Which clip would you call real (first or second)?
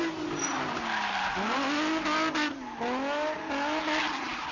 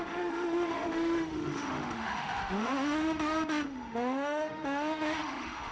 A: first